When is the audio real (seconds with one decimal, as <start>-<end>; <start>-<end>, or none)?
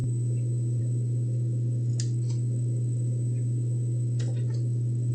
0.0-5.1